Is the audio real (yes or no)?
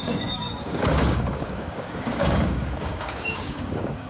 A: no